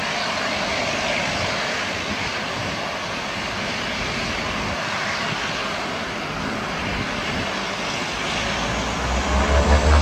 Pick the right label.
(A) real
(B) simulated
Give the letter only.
A